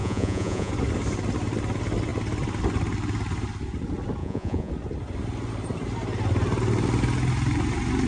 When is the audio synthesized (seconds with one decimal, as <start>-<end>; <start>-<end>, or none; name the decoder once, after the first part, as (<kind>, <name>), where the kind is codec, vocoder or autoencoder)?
0.0-0.7 (vocoder, Vocos); 4.2-4.7